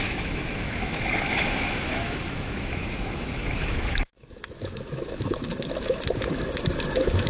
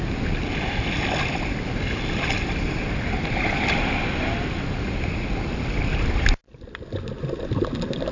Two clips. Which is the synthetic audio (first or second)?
first